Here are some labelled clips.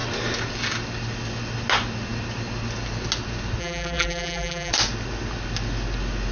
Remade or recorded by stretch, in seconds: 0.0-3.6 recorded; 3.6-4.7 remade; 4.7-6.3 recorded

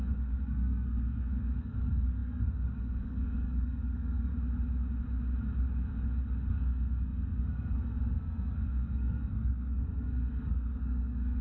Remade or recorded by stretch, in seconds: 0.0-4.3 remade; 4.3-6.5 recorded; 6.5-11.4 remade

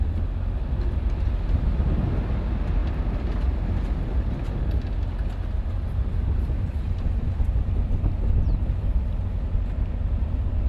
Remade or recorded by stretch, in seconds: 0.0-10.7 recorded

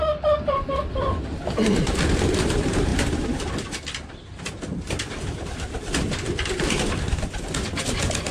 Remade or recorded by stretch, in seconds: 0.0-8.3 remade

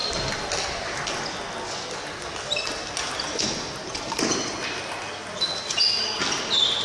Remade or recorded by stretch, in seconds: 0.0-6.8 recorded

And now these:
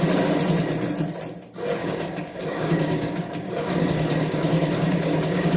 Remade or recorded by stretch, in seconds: 0.0-1.8 recorded; 1.8-5.6 remade

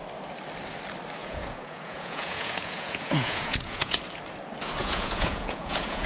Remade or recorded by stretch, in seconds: 0.0-1.2 recorded; 1.2-4.0 remade; 4.0-4.8 recorded; 4.8-6.1 remade